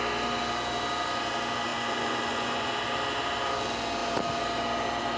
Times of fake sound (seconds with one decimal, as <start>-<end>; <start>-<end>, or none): 1.7-2.7